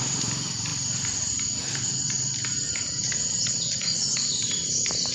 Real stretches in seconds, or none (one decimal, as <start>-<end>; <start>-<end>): 0.0-5.1